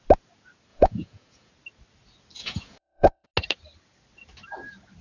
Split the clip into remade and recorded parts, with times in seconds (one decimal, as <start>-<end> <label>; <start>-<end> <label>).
0.0-0.7 recorded; 0.7-1.5 remade; 1.5-2.4 recorded; 2.4-3.3 remade; 3.3-5.0 recorded